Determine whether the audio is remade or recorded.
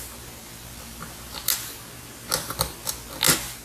recorded